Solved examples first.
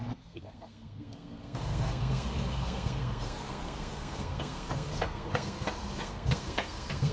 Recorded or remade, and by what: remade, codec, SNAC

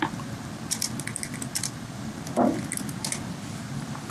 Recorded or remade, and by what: recorded